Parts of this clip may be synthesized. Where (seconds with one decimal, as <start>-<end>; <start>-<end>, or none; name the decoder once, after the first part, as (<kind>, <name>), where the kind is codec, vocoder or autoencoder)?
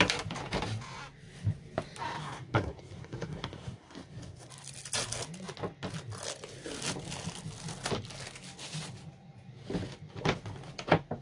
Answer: 2.2-4.5 (codec, SNAC)